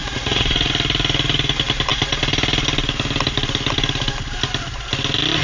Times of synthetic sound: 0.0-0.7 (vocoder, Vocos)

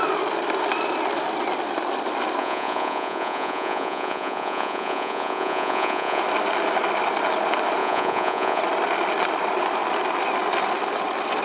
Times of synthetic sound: 2.4-6.2 (vocoder, Vocos); 7.8-8.6

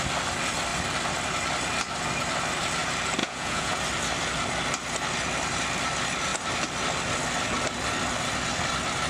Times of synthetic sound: 3.2-3.8 (vocoder, Vocos)

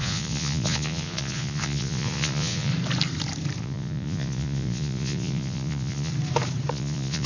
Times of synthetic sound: 0.0-2.7 (vocoder, Vocos); 3.6-6.1; 6.7-7.3

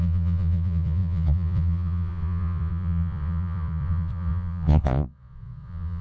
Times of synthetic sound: 0.0-6.0 (vocoder, Vocos)

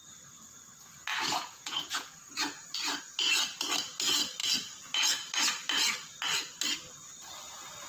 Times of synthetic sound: 1.1-3.0 (vocoder, Vocos)

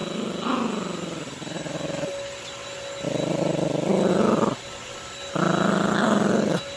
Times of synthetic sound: none